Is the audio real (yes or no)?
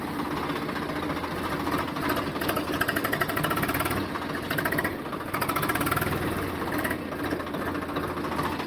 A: yes